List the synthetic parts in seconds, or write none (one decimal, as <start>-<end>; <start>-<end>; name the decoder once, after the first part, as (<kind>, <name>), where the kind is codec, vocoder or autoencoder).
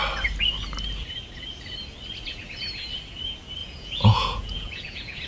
3.6-5.3 (vocoder, Vocos)